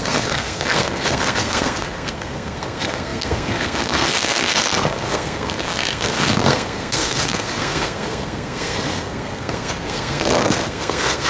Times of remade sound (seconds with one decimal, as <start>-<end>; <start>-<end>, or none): 0.0-11.3